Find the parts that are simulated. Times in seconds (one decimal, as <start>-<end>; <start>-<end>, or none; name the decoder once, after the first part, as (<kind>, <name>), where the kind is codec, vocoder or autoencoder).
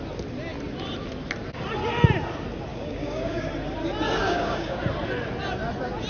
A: 2.7-3.5 (codec, DAC); 4.2-4.8